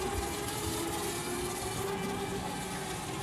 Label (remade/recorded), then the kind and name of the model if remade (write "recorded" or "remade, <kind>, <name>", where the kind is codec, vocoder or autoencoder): recorded